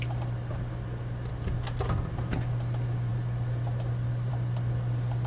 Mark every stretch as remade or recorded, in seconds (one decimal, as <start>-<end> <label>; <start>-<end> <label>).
0.0-5.3 recorded